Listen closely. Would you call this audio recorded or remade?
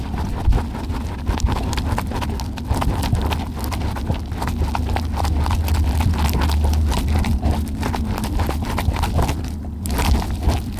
recorded